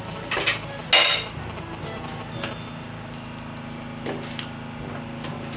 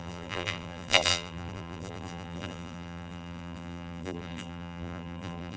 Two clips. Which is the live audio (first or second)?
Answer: first